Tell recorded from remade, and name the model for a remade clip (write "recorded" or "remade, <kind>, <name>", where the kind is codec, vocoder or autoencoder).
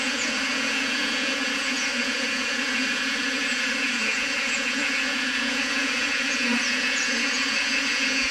remade, vocoder, Vocos